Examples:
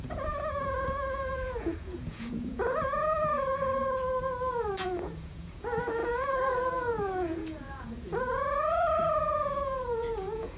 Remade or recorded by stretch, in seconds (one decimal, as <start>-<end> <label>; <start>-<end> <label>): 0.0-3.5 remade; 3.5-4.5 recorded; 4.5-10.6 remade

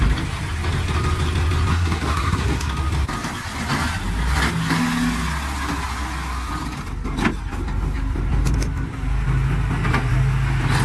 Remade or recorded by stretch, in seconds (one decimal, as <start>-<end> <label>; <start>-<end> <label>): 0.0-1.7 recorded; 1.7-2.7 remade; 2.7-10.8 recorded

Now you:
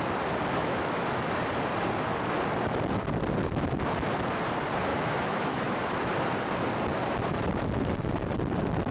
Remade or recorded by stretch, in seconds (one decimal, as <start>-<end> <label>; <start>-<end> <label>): 0.0-0.6 recorded; 0.6-1.3 remade; 1.3-4.9 recorded; 4.9-5.8 remade; 5.8-8.9 recorded